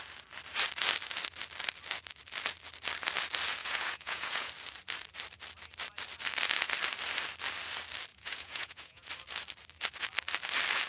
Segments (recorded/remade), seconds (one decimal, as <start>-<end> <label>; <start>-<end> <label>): 0.0-3.6 recorded; 3.6-4.5 remade; 4.5-8.1 recorded; 8.1-9.1 remade; 9.1-10.9 recorded